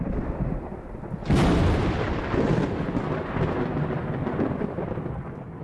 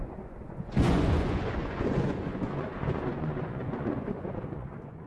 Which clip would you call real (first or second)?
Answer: first